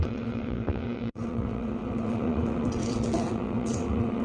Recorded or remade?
remade